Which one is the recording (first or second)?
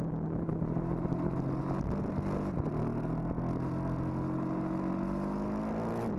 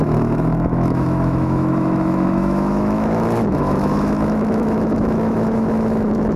first